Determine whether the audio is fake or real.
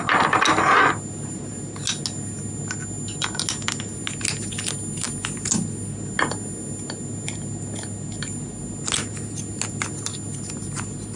real